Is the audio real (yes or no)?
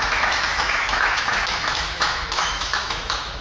no